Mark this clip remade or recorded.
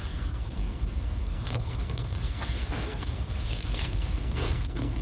remade